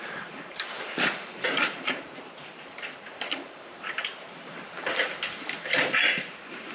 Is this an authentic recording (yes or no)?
no